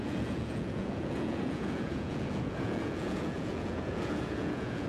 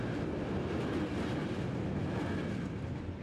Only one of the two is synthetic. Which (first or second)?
first